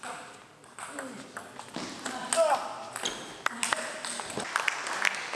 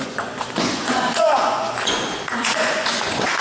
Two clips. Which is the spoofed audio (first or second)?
second